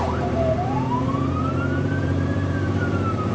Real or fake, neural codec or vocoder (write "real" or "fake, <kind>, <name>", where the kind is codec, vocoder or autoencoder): fake, vocoder, BigVGAN v2